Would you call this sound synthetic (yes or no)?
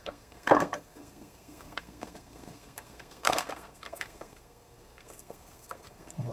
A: yes